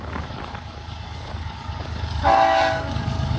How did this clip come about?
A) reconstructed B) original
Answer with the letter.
A